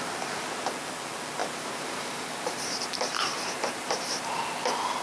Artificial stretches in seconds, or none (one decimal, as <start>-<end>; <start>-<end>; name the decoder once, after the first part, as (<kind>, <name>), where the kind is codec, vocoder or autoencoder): 1.4-4.4 (vocoder, BigVGAN v2)